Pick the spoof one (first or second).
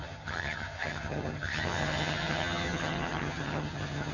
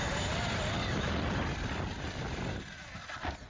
first